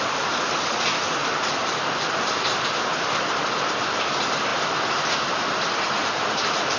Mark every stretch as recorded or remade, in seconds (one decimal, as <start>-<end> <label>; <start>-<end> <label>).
0.0-6.8 recorded